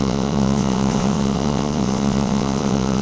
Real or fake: fake